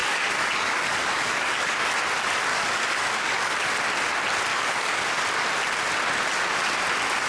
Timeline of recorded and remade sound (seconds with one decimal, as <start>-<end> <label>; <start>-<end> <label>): 0.0-1.9 remade; 1.9-2.5 recorded; 2.5-3.7 remade; 3.7-4.5 recorded; 4.5-5.1 remade; 5.1-7.3 recorded